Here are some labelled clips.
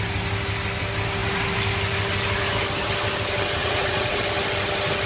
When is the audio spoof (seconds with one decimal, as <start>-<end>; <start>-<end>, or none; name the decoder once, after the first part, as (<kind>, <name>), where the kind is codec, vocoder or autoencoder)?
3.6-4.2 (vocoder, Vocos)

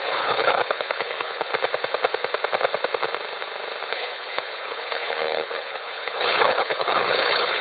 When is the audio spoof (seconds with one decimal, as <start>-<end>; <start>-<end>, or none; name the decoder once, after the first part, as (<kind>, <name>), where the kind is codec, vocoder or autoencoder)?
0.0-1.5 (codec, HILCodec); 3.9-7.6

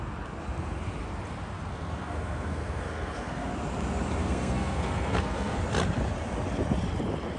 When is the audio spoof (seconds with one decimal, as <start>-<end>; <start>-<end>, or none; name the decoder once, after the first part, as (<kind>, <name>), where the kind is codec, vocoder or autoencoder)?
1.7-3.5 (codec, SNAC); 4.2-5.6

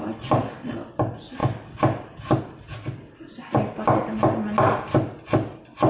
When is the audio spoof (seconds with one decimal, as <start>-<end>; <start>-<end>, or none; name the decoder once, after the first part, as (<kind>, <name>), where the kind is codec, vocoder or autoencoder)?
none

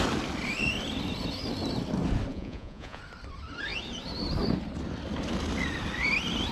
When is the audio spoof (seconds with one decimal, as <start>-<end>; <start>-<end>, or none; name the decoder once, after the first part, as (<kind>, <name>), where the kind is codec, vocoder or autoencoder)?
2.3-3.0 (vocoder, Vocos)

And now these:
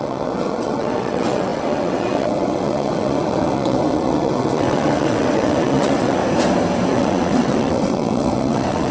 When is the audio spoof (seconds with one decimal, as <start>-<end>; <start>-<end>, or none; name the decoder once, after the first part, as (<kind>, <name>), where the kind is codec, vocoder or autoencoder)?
0.0-6.2 (vocoder, WaveNeXt); 6.9-8.9